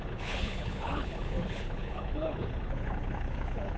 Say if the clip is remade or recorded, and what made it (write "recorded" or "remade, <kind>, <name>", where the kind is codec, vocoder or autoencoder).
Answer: remade, codec, HILCodec